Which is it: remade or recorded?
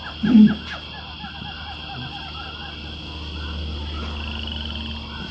recorded